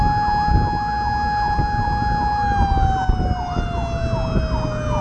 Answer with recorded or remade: recorded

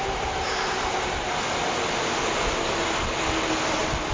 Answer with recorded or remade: recorded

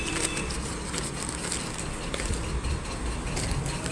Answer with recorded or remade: recorded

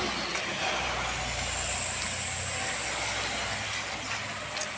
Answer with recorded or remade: recorded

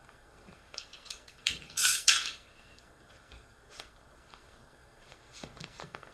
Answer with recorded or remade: remade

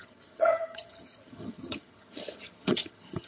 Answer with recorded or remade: remade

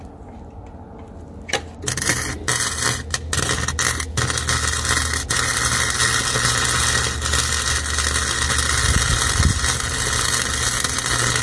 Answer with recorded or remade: recorded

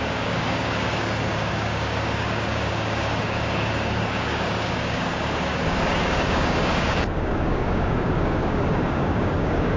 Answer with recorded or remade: remade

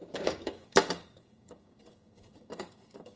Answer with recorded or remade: remade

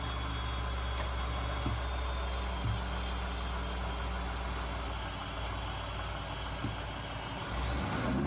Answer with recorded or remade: recorded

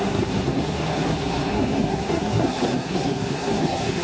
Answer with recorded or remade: remade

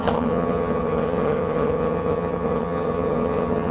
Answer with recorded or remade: remade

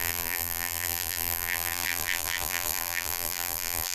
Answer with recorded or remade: remade